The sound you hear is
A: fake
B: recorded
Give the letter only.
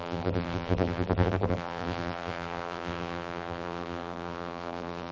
A